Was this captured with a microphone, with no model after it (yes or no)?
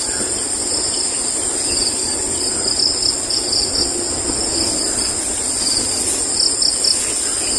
yes